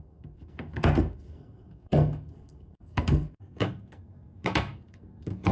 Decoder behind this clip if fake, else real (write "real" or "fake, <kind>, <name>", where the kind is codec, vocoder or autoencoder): fake, codec, SNAC